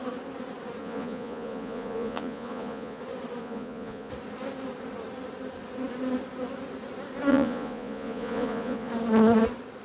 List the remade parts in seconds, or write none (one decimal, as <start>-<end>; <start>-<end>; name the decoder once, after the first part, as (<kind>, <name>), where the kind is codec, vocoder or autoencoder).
0.8-3.0 (vocoder, Vocos); 3.4-4.1; 7.3-8.9